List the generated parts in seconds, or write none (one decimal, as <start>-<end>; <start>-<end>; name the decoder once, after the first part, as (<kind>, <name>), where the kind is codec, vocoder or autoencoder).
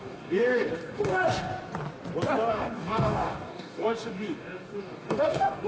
0.0-1.5 (codec, DAC); 2.5-5.7